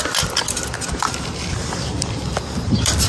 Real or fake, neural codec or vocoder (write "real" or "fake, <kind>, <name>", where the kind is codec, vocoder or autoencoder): real